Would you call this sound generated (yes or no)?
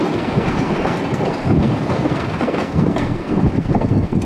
yes